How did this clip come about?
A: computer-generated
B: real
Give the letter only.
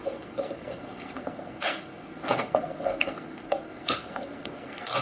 A